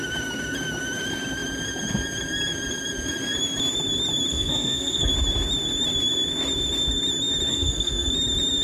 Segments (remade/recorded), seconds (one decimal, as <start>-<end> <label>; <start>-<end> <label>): 0.0-4.3 recorded; 4.3-5.1 remade; 5.1-7.5 recorded; 7.5-8.1 remade; 8.1-8.6 recorded